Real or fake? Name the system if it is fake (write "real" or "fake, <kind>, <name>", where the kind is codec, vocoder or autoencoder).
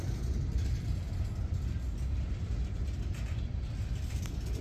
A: real